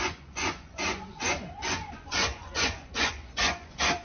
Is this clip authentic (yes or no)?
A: no